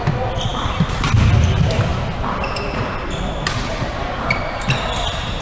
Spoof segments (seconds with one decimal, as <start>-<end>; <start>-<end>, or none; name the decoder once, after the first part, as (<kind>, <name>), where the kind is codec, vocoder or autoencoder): none